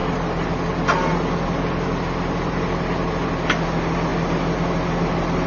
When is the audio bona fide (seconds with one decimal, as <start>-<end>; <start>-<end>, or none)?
0.0-5.5